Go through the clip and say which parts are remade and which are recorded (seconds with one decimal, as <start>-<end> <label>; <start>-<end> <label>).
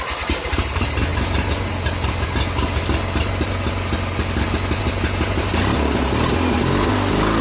0.0-7.4 recorded